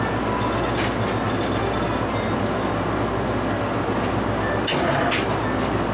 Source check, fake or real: real